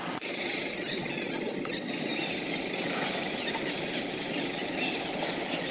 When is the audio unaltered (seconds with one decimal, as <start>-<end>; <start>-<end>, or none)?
2.1-5.7